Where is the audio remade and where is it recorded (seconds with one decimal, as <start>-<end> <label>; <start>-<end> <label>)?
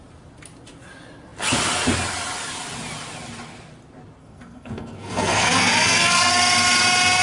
0.0-4.2 recorded; 4.2-6.3 remade; 6.3-7.2 recorded